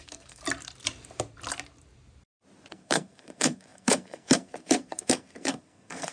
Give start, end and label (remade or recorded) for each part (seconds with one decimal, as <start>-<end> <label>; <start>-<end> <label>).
0.0-0.4 remade; 0.4-2.7 recorded; 2.7-6.1 remade